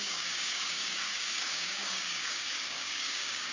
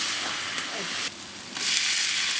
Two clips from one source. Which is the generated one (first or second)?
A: first